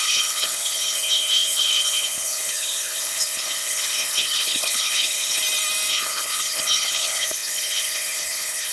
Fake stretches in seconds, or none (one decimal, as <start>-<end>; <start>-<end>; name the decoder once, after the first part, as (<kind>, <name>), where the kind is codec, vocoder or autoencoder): 0.0-5.4 (codec, HILCodec); 5.9-8.7